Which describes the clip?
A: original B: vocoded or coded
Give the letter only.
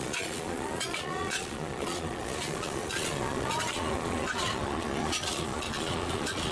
B